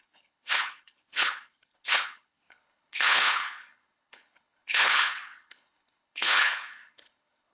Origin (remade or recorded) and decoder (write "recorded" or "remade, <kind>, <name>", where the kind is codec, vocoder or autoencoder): remade, codec, HILCodec